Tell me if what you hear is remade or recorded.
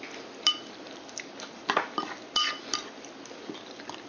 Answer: recorded